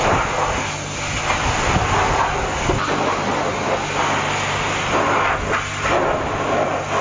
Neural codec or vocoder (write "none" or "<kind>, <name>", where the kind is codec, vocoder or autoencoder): none